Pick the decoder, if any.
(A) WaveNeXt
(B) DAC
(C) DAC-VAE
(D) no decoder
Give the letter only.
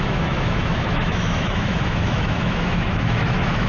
C